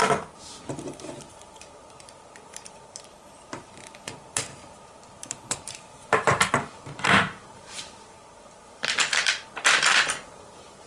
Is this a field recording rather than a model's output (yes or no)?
no